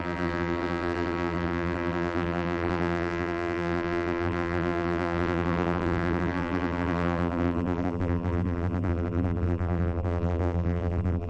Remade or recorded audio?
remade